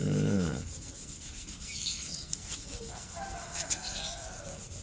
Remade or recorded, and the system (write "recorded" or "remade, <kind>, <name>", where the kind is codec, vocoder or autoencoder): remade, codec, SNAC